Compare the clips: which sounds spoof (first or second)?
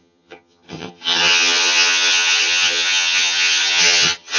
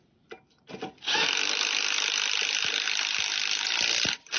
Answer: first